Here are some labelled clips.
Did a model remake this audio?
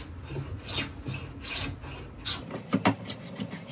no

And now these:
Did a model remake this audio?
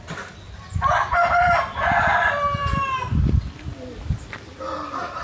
yes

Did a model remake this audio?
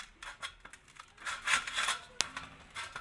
no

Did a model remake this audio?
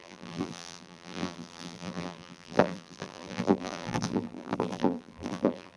yes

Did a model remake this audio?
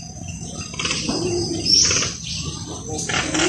no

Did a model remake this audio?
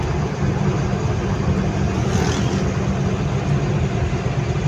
no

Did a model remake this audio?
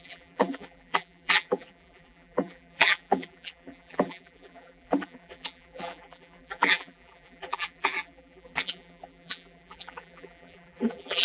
yes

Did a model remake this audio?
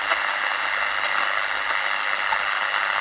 no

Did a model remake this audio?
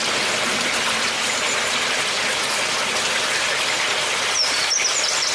no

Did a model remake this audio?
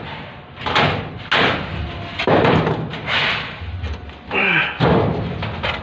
no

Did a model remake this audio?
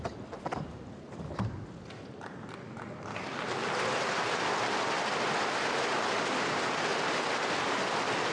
no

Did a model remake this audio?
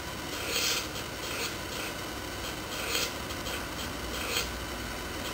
no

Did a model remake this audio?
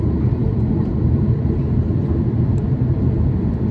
no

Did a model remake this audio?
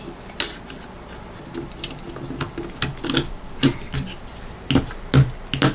no